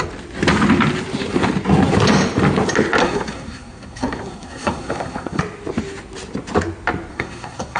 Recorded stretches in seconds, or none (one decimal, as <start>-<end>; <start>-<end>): 0.0-3.0; 5.4-7.1